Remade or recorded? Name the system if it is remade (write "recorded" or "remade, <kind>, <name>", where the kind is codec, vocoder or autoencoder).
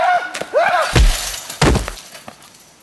recorded